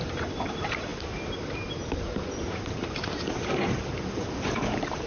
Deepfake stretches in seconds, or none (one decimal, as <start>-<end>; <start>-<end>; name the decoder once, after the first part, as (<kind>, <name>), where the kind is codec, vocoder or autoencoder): 0.0-5.1 (vocoder, BigVGAN v2)